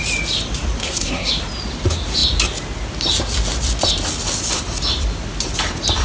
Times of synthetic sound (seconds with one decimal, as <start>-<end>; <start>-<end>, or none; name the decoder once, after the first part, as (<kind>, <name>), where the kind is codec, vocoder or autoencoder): 0.8-1.3 (codec, SNAC)